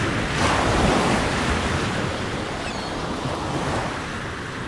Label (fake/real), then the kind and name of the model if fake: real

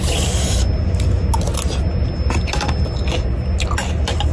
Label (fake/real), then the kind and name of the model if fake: real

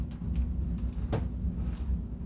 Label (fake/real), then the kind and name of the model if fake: real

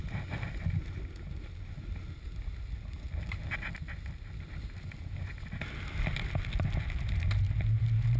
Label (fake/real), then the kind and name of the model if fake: real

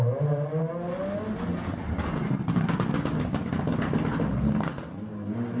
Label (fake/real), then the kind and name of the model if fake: real